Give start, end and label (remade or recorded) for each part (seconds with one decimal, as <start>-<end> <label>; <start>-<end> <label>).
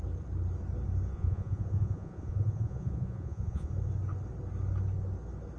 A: 0.0-1.1 recorded; 1.1-3.7 remade; 3.7-5.6 recorded